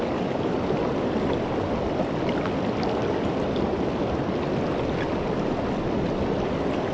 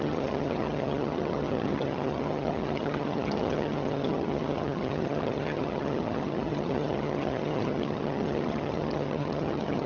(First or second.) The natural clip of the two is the first